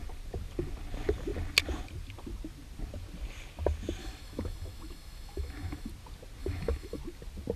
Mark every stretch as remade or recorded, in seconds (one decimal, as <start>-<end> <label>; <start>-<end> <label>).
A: 0.0-4.0 recorded; 4.0-5.9 remade; 5.9-6.4 recorded; 6.4-7.0 remade; 7.0-7.6 recorded